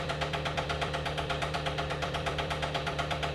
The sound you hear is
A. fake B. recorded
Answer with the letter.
A